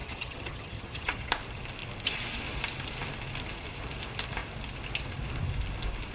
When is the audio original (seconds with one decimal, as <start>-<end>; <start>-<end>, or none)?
1.3-6.1